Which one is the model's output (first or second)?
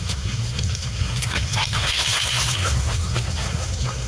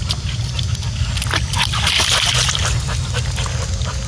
first